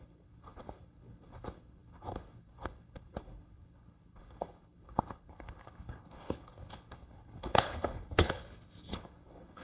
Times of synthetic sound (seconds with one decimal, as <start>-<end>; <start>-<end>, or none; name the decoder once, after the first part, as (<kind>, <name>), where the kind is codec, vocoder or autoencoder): 0.0-9.6 (codec, HILCodec)